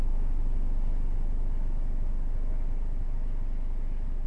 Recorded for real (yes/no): yes